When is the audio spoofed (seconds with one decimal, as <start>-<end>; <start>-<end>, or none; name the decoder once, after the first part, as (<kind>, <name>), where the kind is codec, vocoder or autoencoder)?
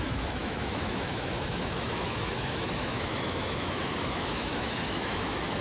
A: 0.0-5.6 (autoencoder, DAC-VAE)